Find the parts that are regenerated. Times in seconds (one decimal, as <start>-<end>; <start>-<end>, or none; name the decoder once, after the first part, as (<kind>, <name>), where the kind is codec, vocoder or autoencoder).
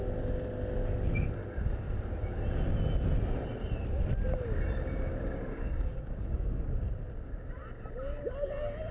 5.5-6.7 (codec, DAC)